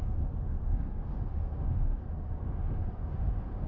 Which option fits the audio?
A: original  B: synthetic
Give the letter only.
B